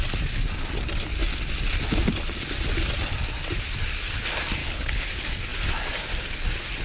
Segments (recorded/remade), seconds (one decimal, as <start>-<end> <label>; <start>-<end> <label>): 0.0-4.6 recorded; 4.6-5.1 remade; 5.1-6.8 recorded